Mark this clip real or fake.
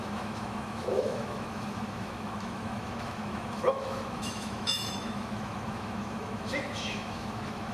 fake